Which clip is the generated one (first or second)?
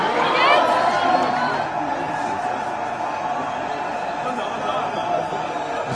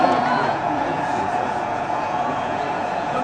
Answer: second